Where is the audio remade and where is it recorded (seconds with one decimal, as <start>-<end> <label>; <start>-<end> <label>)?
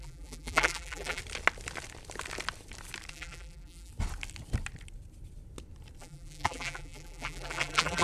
0.0-1.2 remade; 1.2-3.1 recorded; 3.1-3.9 remade; 3.9-6.0 recorded; 6.0-8.0 remade